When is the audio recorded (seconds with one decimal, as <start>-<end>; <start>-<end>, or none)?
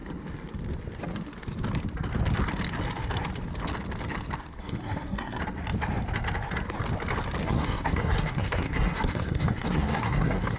0.0-4.6; 5.4-7.4